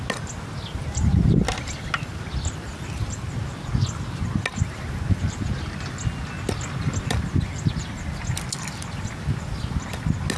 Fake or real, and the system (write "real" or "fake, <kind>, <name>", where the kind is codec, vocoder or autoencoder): real